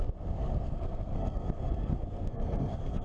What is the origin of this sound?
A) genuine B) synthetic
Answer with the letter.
B